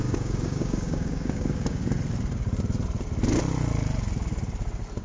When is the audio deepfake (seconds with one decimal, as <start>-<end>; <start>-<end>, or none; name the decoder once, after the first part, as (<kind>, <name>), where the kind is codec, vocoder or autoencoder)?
0.0-1.8 (codec, DAC)